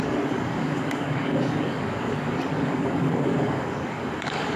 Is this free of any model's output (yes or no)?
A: no